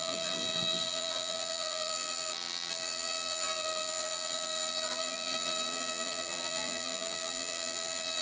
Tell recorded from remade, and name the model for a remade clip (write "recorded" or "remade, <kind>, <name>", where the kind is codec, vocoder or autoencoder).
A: remade, vocoder, BigVGAN v2